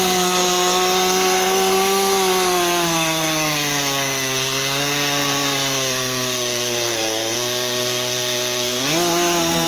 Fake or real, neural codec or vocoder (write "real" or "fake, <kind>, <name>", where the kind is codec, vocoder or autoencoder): fake, codec, SNAC